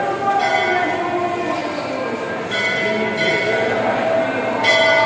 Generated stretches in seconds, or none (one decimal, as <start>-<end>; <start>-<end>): none